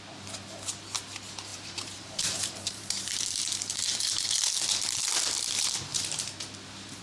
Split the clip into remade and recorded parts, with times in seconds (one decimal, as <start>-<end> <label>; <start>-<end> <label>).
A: 0.0-1.5 recorded; 1.5-5.0 remade; 5.0-7.0 recorded

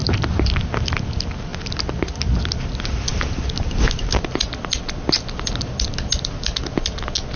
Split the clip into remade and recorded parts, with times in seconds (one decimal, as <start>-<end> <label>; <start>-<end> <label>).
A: 0.0-0.6 remade; 0.6-7.4 recorded

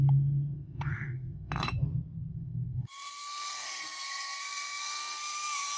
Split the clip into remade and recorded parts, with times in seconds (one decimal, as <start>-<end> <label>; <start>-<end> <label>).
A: 0.0-1.5 remade; 1.5-2.3 recorded; 2.3-5.8 remade

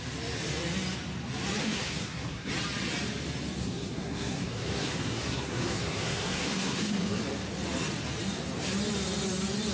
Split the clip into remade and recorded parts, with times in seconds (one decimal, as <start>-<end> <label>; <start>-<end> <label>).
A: 0.0-1.6 recorded; 1.6-2.5 remade; 2.5-3.6 recorded; 3.6-7.2 remade; 7.2-9.7 recorded

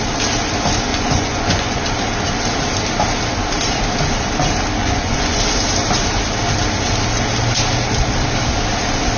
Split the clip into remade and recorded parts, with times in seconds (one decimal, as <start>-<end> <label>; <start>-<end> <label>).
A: 0.0-0.9 recorded; 0.9-1.8 remade; 1.8-4.8 recorded; 4.8-5.4 remade; 5.4-9.2 recorded

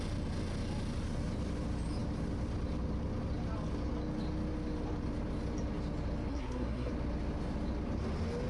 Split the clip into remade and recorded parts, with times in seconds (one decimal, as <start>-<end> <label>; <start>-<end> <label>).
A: 0.0-6.3 recorded; 6.3-6.9 remade; 6.9-8.5 recorded

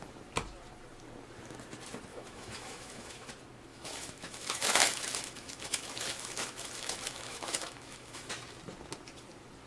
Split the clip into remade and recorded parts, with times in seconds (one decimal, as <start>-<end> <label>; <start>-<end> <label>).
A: 0.0-2.1 recorded; 2.1-3.3 remade; 3.3-3.7 recorded; 3.7-8.3 remade; 8.3-9.7 recorded